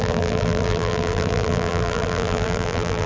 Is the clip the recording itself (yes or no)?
no